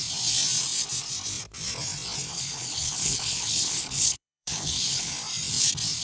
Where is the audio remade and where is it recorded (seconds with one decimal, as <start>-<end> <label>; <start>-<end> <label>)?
0.0-2.3 recorded; 2.3-5.1 remade; 5.1-6.0 recorded